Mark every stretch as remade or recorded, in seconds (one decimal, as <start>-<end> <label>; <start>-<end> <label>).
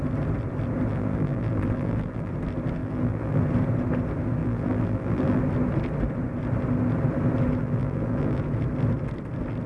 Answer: 0.0-0.9 recorded; 0.9-2.3 remade; 2.3-2.8 recorded; 2.8-3.4 remade; 3.4-4.4 recorded; 4.4-5.4 remade; 5.4-7.6 recorded; 7.6-8.4 remade; 8.4-9.7 recorded